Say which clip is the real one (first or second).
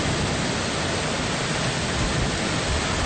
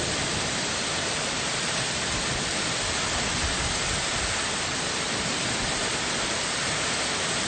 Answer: first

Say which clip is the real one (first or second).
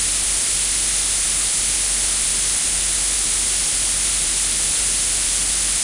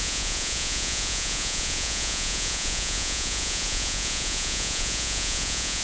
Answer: first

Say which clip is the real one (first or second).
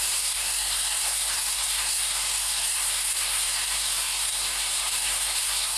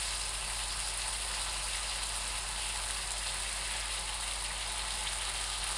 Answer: second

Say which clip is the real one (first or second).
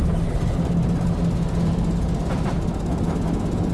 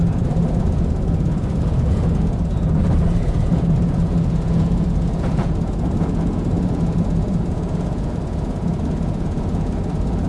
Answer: first